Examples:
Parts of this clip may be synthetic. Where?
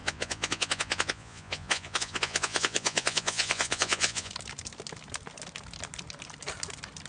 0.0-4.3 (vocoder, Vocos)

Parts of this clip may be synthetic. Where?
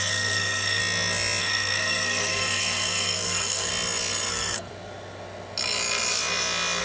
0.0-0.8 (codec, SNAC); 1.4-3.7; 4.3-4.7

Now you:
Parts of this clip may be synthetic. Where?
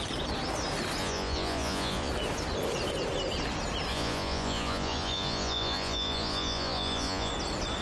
1.0-2.1 (vocoder, Vocos); 3.9-7.3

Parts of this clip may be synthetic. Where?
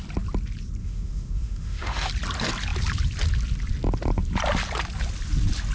0.8-2.1 (autoencoder, DAC-VAE)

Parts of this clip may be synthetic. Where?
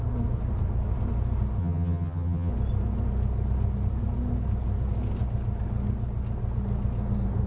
1.6-2.5 (vocoder, HiFi-GAN)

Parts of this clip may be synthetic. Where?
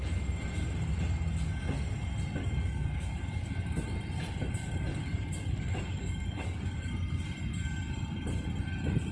2.4-3.5 (codec, DAC); 4.6-6.9